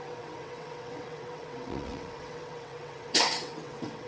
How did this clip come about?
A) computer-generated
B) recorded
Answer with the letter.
A